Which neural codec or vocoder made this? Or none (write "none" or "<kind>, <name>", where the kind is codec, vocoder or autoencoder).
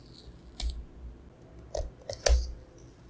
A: none